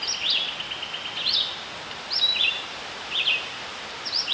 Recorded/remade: recorded